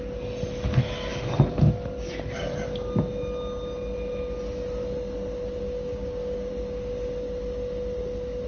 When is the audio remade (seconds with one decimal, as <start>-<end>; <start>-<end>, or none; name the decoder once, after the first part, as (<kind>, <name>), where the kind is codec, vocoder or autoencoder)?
5.6-6.5 (codec, DAC)